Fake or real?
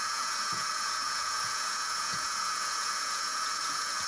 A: fake